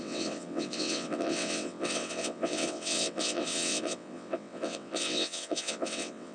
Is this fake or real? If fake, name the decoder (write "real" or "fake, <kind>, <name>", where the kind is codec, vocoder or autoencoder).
fake, vocoder, WaveNeXt